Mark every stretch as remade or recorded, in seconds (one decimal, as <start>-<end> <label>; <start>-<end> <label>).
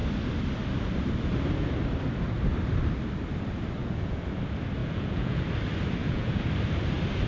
0.0-3.8 recorded; 3.8-4.3 remade; 4.3-4.8 recorded; 4.8-5.4 remade; 5.4-6.0 recorded; 6.0-6.5 remade; 6.5-7.3 recorded